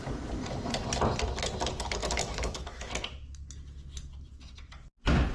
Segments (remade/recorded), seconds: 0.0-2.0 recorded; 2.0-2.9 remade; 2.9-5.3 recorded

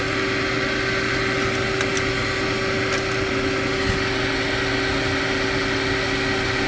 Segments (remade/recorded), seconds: 0.0-6.7 recorded

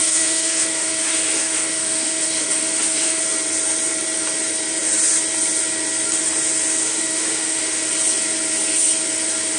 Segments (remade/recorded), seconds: 0.0-3.2 remade; 3.2-6.8 recorded; 6.8-7.9 remade; 7.9-9.6 recorded

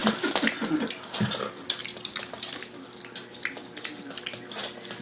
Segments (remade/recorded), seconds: 0.0-5.0 recorded

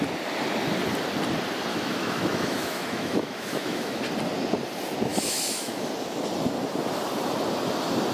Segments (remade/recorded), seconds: 0.0-1.7 recorded; 1.7-4.0 remade; 4.0-5.1 recorded; 5.1-5.9 remade; 5.9-8.1 recorded

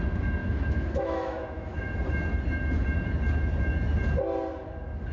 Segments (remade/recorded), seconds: 0.0-0.4 recorded; 0.4-1.9 remade; 1.9-5.1 recorded

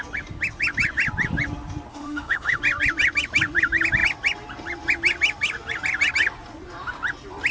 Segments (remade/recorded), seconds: 0.0-1.9 recorded; 1.9-2.6 remade; 2.6-7.5 recorded